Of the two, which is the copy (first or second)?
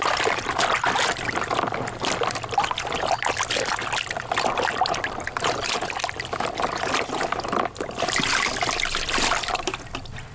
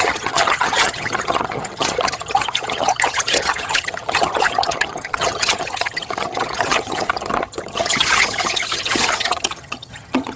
second